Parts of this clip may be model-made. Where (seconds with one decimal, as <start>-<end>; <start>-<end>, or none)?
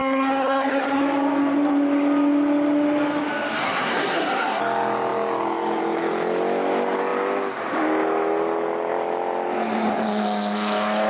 0.0-1.0; 3.6-4.6